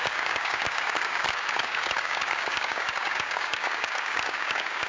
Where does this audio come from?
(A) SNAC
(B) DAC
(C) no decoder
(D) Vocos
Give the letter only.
B